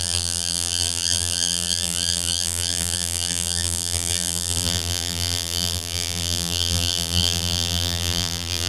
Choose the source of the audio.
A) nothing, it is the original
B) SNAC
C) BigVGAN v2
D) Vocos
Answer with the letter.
C